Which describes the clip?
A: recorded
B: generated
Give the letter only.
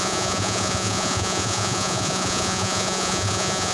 B